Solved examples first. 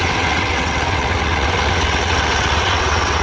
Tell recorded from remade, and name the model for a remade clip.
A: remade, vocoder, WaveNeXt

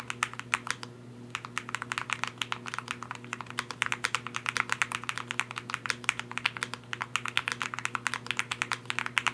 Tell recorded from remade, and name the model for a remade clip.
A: recorded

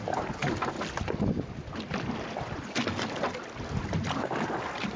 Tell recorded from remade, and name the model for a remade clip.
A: recorded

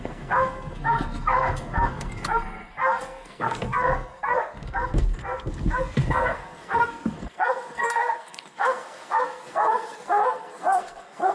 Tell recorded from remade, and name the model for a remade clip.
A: remade, codec, SNAC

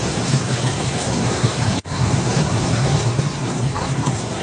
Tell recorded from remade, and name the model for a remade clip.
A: remade, codec, SNAC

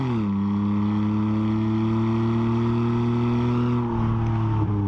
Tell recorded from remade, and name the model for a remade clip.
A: recorded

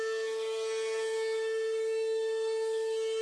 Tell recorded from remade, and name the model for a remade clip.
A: remade, codec, SNAC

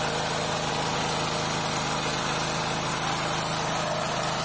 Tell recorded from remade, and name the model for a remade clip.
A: recorded